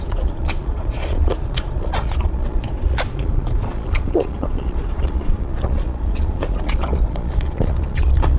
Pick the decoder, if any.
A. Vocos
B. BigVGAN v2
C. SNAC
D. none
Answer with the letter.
A